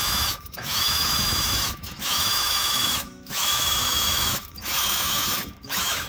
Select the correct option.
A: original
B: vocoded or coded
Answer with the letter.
B